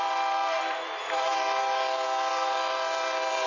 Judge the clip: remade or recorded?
remade